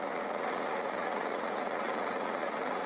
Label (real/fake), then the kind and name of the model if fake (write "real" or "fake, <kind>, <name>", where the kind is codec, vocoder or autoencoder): fake, vocoder, Vocos